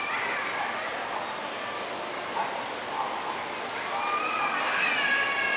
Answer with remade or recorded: recorded